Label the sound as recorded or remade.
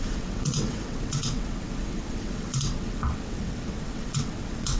remade